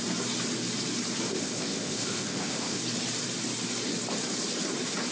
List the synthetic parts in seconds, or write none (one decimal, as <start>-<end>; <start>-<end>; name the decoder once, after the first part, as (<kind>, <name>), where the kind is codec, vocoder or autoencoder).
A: 1.3-2.8 (codec, ZipCodec)